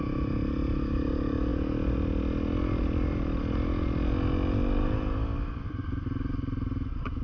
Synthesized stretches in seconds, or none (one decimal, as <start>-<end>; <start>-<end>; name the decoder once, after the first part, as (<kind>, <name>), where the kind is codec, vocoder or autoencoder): none

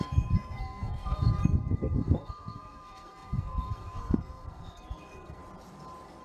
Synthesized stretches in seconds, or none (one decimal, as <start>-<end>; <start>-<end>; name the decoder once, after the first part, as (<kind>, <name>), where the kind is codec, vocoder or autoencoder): 0.0-5.4 (codec, SNAC)